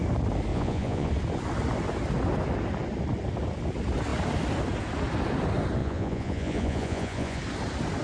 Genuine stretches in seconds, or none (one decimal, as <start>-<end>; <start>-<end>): 0.0-0.5; 1.1-5.8; 7.4-8.0